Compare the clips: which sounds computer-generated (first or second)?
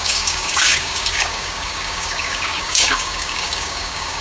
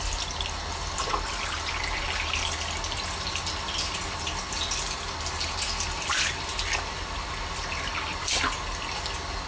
first